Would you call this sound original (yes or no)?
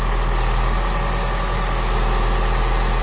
yes